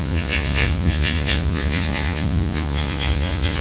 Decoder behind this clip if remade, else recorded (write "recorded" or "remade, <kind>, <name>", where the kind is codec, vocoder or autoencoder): remade, vocoder, Vocos